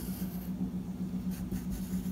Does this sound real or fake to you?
real